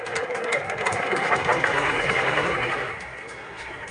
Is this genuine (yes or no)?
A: no